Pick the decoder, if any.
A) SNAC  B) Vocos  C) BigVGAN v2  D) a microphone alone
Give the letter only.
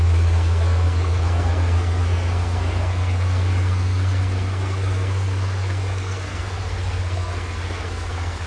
A